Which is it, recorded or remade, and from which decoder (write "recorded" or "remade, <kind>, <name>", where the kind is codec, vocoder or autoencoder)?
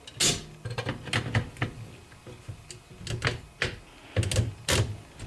recorded